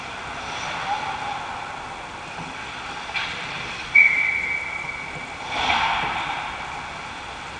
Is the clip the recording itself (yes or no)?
yes